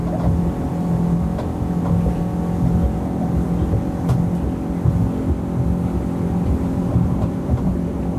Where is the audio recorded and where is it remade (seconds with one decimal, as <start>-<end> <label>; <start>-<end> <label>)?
0.0-6.9 recorded; 6.9-7.7 remade; 7.7-8.2 recorded

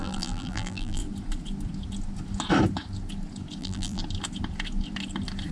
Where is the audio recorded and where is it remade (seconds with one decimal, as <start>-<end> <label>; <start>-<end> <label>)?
0.0-1.0 remade; 1.0-3.6 recorded; 3.6-4.0 remade; 4.0-5.5 recorded

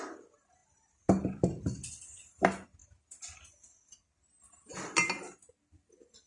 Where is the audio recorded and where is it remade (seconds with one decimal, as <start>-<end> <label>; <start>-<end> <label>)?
0.0-6.3 recorded

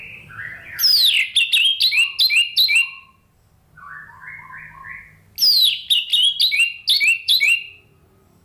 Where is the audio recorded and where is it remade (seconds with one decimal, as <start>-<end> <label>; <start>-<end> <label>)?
0.0-0.8 remade; 0.8-5.5 recorded; 5.5-6.1 remade; 6.1-7.2 recorded; 7.2-8.4 remade

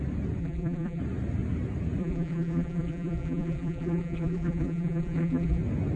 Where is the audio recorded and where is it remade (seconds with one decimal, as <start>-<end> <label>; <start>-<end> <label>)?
0.0-0.4 recorded; 0.4-1.0 remade; 1.0-2.0 recorded; 2.0-5.6 remade; 5.6-6.0 recorded

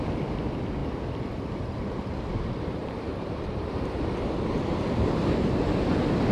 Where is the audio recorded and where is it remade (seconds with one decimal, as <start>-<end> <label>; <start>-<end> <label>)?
0.0-2.8 recorded; 2.8-4.1 remade; 4.1-6.3 recorded

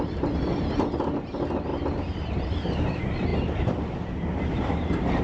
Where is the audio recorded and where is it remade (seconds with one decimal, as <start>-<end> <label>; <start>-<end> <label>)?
0.0-1.7 recorded; 1.7-2.4 remade; 2.4-3.3 recorded; 3.3-5.2 remade